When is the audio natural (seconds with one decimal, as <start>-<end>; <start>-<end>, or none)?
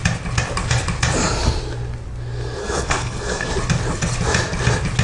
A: 0.0-2.6; 3.5-5.0